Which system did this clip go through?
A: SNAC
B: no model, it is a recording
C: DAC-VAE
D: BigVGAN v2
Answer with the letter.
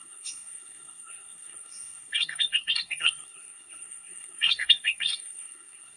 A